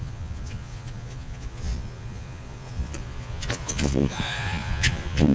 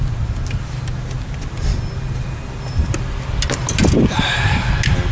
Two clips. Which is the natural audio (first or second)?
second